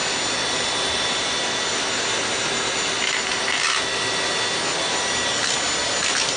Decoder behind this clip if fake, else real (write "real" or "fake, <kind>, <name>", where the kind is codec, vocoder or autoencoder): real